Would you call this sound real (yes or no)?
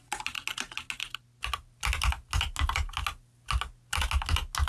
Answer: yes